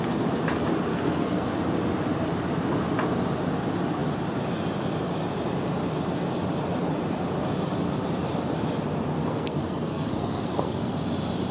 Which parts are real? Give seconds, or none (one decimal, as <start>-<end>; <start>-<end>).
0.0-0.9; 1.5-9.2; 10.9-11.5